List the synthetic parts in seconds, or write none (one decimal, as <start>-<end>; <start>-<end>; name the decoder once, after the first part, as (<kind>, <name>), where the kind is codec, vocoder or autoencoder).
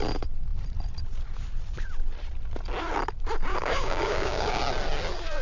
3.5-4.6 (codec, DAC)